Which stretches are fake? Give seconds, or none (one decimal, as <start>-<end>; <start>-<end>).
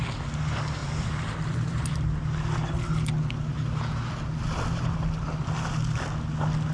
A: 0.8-2.2